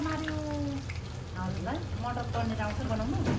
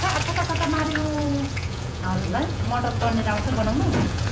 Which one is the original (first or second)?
first